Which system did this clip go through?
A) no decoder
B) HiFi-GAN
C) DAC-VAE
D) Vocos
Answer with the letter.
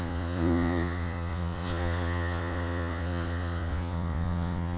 D